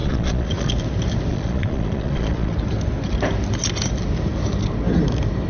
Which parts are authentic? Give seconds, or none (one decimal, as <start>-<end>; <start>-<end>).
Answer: 0.7-1.3; 2.5-5.5